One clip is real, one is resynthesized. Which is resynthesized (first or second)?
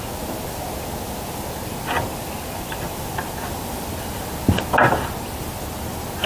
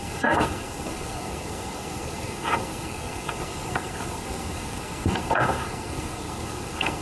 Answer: second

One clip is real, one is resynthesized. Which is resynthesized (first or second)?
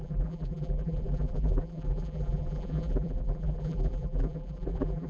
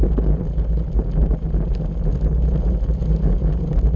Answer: first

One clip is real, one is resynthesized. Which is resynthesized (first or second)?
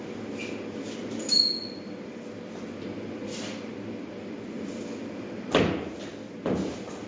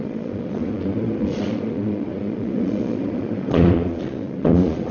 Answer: second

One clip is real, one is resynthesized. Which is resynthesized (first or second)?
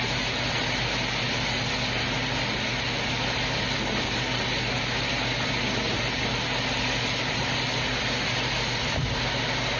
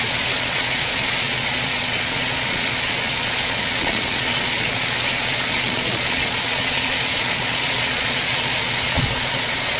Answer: second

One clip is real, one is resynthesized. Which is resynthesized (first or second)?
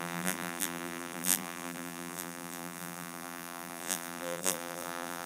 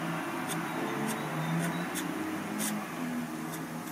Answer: first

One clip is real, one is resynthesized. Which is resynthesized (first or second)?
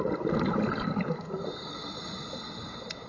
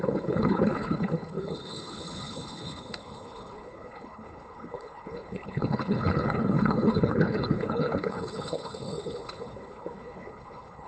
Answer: second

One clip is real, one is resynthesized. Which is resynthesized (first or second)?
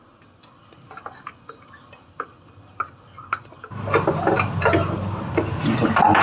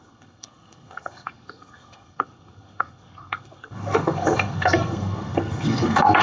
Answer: second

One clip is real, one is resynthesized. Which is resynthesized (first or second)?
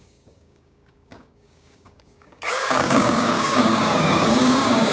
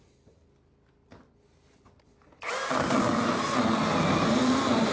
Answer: first